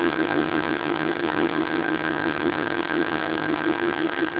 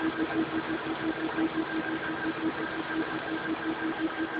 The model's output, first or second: first